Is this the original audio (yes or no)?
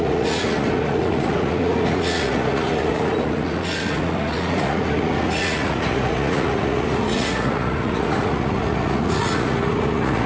no